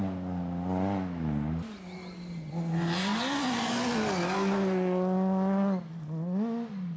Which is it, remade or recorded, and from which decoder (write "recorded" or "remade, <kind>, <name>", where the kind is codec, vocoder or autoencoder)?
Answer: recorded